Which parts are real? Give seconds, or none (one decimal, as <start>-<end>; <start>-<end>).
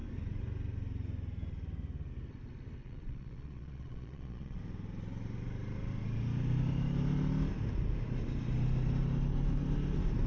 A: 0.0-2.8; 4.6-10.3